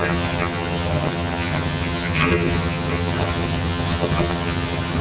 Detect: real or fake fake